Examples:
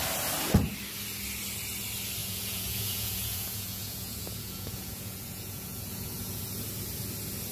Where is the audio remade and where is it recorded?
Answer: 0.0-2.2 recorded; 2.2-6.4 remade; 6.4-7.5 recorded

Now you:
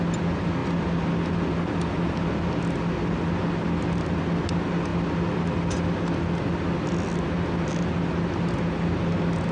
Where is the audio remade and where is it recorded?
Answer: 0.0-9.5 recorded

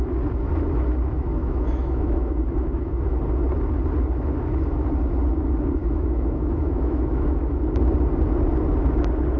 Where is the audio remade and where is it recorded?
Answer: 0.0-1.4 recorded; 1.4-3.2 remade; 3.2-5.8 recorded; 5.8-7.4 remade; 7.4-9.4 recorded

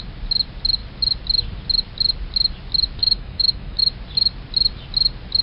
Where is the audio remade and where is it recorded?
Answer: 0.0-3.0 recorded; 3.0-3.8 remade; 3.8-5.4 recorded

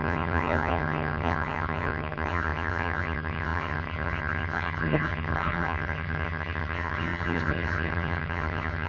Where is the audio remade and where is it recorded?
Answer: 0.0-8.9 remade

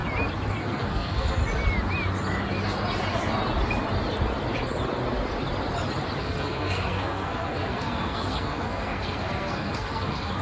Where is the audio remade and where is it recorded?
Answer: 0.0-0.6 recorded; 0.6-1.4 remade; 1.4-6.2 recorded; 6.2-10.4 remade

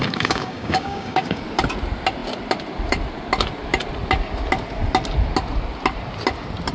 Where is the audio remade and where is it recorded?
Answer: 0.0-1.4 remade; 1.4-6.7 recorded